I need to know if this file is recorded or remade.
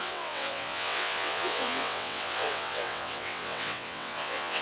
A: remade